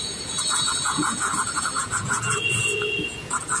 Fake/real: fake